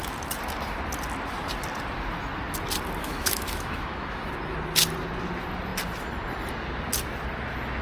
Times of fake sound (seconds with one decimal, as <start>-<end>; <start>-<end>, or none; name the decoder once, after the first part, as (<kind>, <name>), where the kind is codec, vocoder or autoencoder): 3.0-4.3 (autoencoder, DAC-VAE)